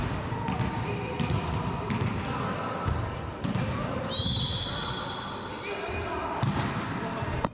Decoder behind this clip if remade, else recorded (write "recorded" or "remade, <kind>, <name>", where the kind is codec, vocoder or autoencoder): recorded